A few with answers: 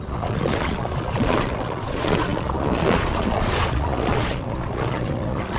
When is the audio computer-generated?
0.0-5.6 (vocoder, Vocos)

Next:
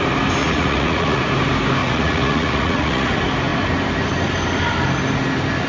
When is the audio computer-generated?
0.4-1.2 (vocoder, Vocos); 1.8-3.1

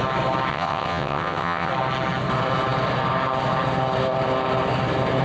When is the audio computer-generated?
0.5-1.7 (vocoder, WaveNeXt)

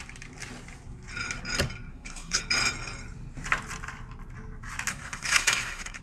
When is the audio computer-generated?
1.9-2.4 (codec, SNAC); 4.9-6.0